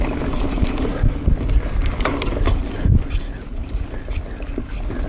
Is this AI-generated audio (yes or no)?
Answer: no